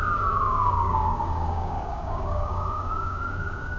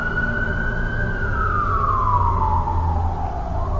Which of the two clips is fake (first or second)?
first